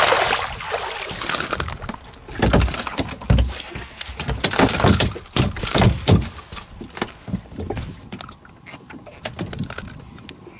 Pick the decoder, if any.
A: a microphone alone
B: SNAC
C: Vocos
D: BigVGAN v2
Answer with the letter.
A